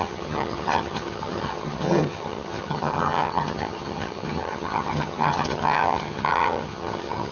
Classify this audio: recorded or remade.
remade